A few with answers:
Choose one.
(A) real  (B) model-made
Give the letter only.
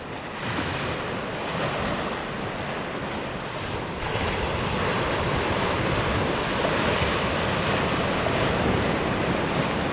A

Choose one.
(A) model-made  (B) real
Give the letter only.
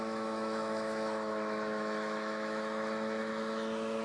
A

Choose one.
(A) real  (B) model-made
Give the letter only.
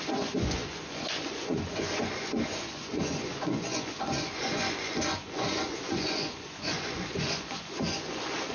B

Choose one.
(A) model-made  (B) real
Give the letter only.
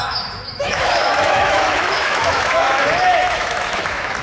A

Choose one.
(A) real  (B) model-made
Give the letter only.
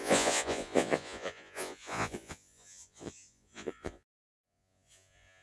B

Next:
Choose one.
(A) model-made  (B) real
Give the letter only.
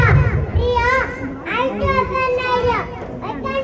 B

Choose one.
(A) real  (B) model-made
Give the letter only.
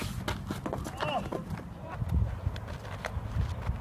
A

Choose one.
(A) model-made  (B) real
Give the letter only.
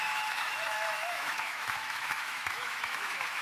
A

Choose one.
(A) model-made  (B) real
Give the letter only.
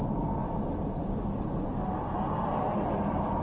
B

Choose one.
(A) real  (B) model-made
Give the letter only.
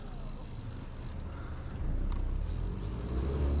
A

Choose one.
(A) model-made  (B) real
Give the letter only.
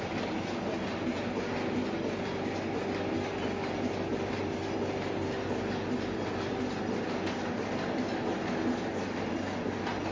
B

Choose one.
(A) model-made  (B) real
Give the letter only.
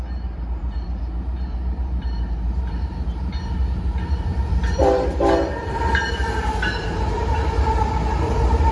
A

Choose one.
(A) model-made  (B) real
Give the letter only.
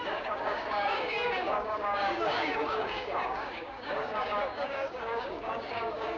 A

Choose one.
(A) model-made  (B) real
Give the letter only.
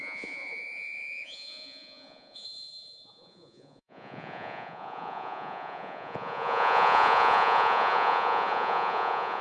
A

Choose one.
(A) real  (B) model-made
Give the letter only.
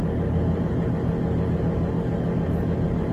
A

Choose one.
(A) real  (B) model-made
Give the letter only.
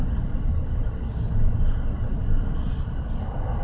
A